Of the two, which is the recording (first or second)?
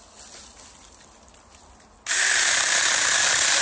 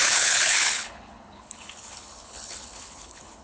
first